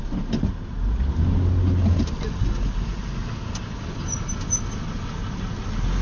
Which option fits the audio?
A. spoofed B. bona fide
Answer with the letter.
B